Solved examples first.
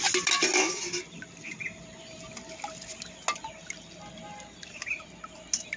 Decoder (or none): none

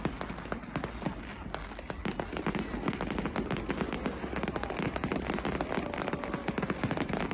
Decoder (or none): none